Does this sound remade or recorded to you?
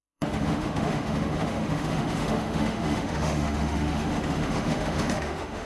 remade